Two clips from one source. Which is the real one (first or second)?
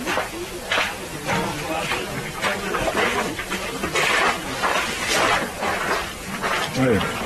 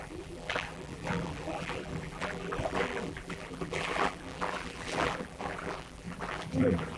first